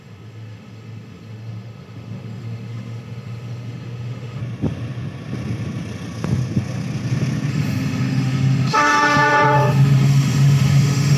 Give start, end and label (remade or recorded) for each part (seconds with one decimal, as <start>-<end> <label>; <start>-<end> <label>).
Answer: 0.0-4.4 remade; 4.4-7.5 recorded; 7.5-11.2 remade